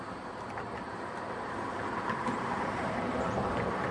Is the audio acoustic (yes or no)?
no